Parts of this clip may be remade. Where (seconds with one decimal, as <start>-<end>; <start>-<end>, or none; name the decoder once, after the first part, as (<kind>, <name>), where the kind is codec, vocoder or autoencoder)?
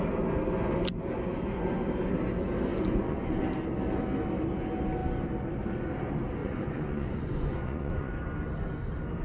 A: 2.7-3.4 (vocoder, Vocos); 6.4-8.1